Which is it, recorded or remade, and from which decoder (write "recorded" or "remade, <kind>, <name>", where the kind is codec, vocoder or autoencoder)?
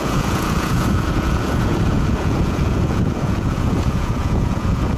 remade, vocoder, Vocos